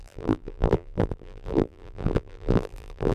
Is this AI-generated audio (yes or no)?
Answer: yes